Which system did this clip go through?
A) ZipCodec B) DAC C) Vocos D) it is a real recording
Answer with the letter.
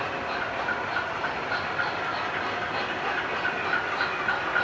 D